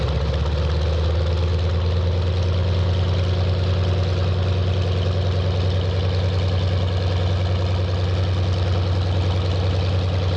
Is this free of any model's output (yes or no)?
yes